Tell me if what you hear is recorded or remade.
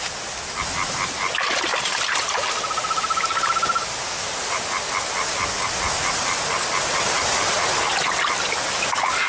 recorded